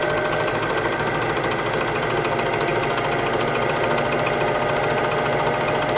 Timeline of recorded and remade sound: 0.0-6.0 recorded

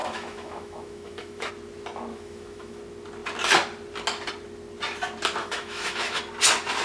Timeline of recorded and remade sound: 0.0-1.5 remade; 1.5-2.1 recorded; 2.1-2.8 remade; 2.8-5.4 recorded; 5.4-6.2 remade; 6.2-6.8 recorded

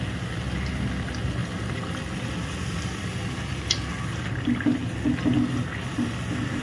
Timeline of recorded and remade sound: 0.0-6.6 recorded